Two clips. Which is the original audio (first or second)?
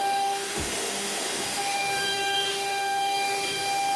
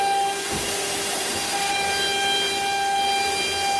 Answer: second